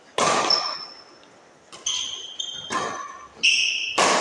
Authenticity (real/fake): real